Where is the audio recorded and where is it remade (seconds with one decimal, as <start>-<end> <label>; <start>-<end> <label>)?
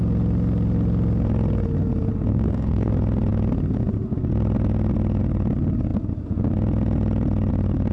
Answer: 0.0-2.3 recorded; 2.3-2.9 remade; 2.9-7.9 recorded